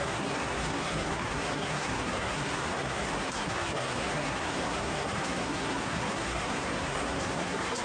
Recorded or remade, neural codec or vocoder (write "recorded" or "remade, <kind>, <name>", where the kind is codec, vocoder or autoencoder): remade, codec, SNAC